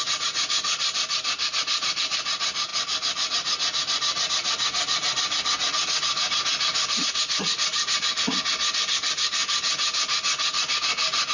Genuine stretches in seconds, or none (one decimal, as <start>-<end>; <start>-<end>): 0.0-11.3